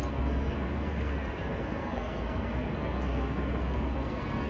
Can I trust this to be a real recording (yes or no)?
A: no